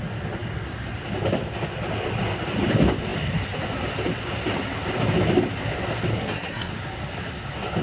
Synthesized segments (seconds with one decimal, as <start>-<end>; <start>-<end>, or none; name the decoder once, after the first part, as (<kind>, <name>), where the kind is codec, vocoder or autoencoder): 6.1-6.7 (codec, SNAC)